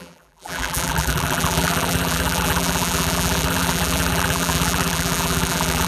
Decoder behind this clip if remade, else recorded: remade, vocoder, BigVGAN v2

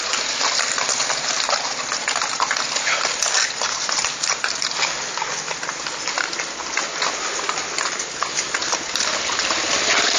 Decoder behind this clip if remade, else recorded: recorded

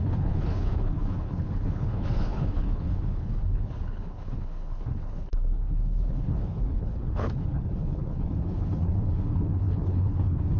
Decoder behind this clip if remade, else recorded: remade, codec, HILCodec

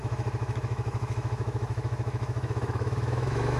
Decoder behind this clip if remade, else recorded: remade, autoencoder, DAC-VAE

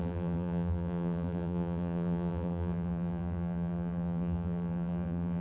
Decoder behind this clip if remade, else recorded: remade, vocoder, BigVGAN v2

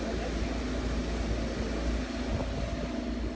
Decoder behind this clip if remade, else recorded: recorded